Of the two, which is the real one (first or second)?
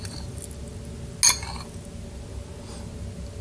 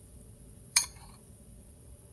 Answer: first